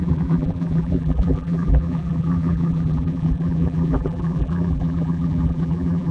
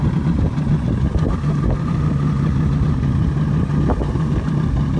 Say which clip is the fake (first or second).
first